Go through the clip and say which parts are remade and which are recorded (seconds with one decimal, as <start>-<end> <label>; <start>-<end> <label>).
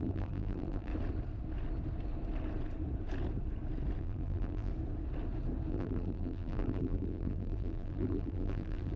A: 0.0-0.9 remade; 0.9-4.0 recorded; 4.0-4.7 remade; 4.7-5.7 recorded; 5.7-9.0 remade